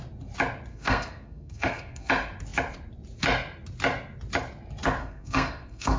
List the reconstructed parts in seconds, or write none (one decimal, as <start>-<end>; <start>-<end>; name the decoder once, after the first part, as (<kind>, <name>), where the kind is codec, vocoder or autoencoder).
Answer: 0.7-2.1 (codec, SNAC); 5.0-6.0